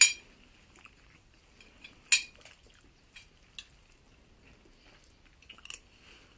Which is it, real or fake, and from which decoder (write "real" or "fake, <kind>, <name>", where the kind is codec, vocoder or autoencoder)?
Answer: real